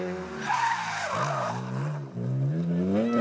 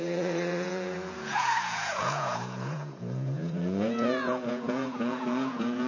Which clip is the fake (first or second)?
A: second